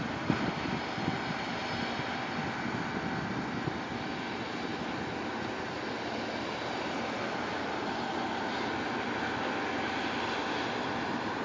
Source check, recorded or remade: recorded